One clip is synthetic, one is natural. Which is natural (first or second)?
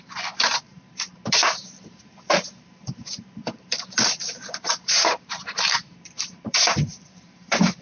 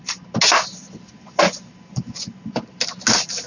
second